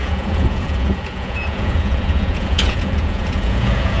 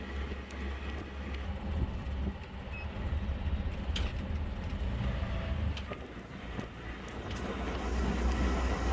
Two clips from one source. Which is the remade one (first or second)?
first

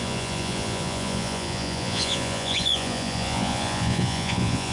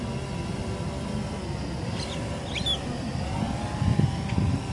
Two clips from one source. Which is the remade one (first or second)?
first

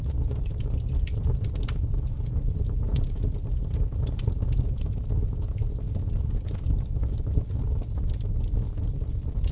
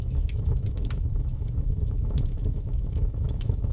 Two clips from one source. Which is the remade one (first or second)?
second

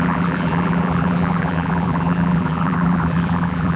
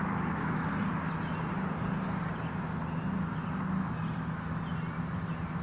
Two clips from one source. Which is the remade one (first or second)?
first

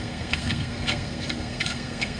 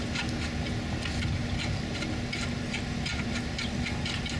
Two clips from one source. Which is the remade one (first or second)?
first